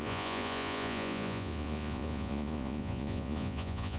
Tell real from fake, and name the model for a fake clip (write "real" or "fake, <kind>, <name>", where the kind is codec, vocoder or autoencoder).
fake, vocoder, Vocos